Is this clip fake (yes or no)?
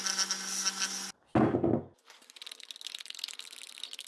no